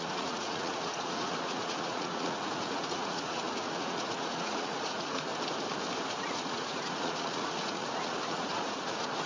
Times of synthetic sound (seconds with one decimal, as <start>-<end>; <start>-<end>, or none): 0.0-5.3; 6.1-9.3